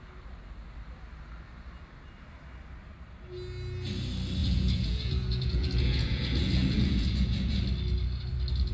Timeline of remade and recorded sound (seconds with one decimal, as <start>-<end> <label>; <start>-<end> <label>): 0.0-4.4 recorded; 4.4-7.6 remade; 7.6-8.7 recorded